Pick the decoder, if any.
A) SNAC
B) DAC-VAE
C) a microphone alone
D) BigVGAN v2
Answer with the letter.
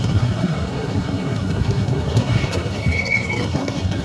A